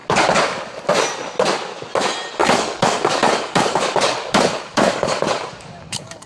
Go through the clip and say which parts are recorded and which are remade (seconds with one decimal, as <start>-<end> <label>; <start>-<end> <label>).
0.0-0.9 remade; 0.9-2.4 recorded; 2.4-6.3 remade